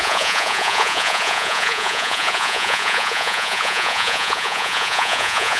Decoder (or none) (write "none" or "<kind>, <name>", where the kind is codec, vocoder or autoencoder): vocoder, Vocos